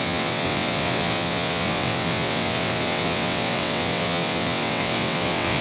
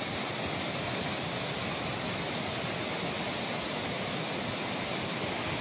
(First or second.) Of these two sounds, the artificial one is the first